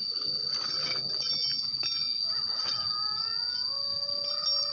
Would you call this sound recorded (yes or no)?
yes